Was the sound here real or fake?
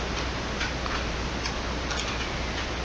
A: real